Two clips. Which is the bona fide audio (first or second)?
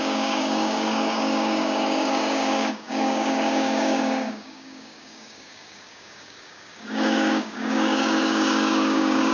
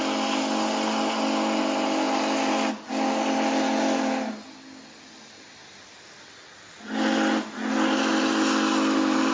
second